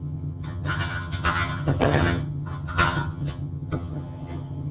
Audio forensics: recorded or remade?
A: remade